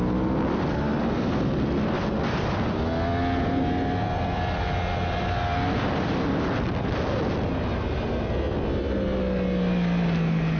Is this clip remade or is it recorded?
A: recorded